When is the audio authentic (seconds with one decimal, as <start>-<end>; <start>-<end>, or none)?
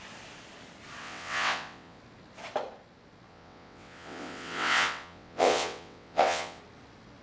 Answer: 0.0-1.0; 2.0-3.3; 6.6-7.2